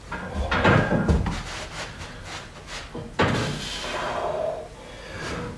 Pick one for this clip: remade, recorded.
recorded